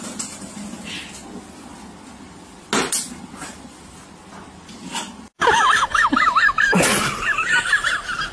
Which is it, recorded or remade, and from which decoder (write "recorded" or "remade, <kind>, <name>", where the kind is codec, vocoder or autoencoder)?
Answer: recorded